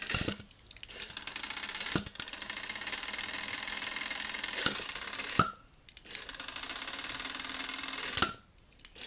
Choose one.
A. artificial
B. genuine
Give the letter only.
B